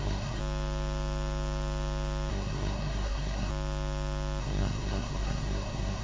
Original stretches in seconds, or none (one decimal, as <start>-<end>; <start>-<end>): 0.4-2.3; 3.5-4.4